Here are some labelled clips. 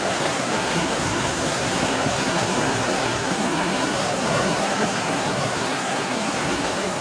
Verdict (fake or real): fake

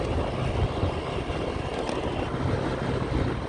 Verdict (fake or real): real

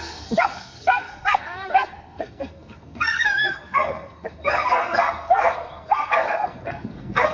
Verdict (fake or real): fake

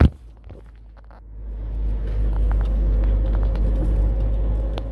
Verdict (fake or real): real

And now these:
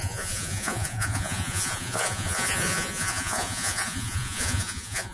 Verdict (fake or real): fake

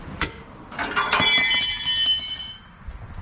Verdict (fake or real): real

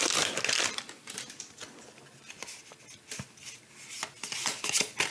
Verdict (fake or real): real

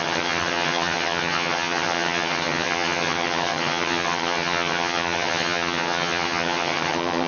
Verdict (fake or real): fake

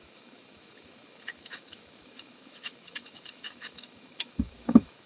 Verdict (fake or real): fake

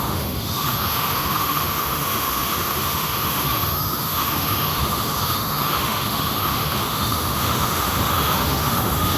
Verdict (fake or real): fake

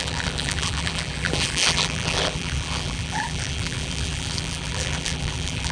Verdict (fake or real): fake